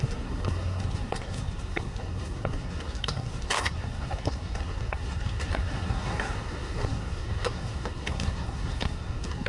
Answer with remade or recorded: remade